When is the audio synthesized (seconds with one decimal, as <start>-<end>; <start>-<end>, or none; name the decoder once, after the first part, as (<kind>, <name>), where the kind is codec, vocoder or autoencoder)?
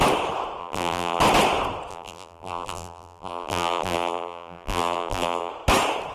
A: 0.6-1.2 (vocoder, BigVGAN v2); 1.9-5.5